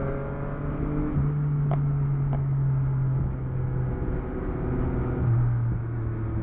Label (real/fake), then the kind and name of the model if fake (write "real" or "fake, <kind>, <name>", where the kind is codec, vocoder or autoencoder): real